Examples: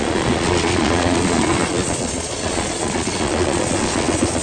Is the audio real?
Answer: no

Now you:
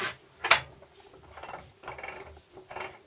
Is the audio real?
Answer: yes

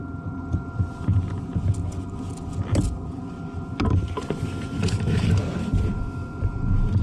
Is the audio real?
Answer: yes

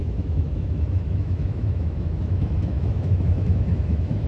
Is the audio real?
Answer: no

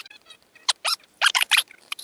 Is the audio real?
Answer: no